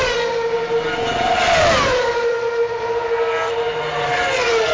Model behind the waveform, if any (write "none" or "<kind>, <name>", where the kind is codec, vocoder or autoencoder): none